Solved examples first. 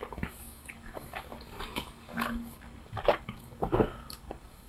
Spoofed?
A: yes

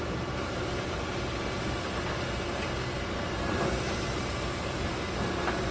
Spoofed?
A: no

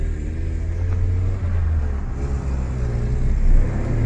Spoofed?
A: no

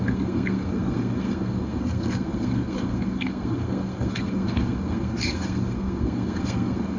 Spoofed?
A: yes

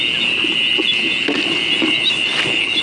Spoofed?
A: no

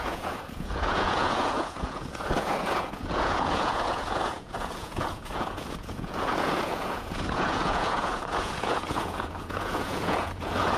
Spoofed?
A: yes